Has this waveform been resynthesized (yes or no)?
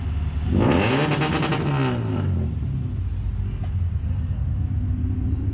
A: no